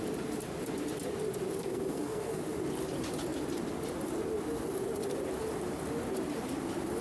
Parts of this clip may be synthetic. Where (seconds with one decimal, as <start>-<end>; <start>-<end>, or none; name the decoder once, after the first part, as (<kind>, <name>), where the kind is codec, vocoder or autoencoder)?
1.6-2.4 (codec, SNAC)